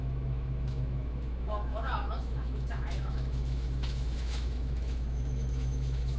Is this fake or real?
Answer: fake